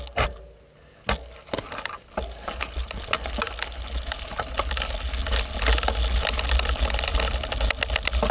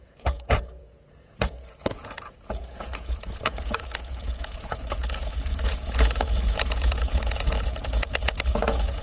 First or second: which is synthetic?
second